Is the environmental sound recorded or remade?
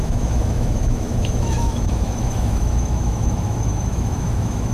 remade